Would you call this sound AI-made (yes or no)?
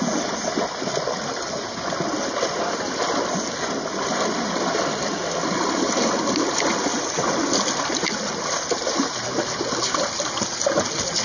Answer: no